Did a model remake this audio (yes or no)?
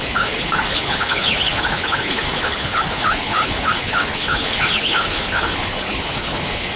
yes